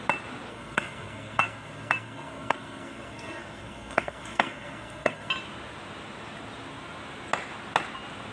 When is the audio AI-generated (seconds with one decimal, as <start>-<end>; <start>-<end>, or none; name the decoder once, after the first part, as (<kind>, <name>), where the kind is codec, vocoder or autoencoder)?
0.5-5.3 (codec, SNAC)